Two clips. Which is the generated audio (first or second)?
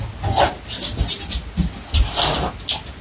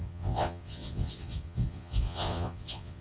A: second